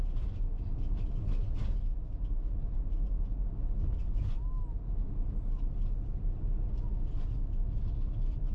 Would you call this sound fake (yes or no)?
no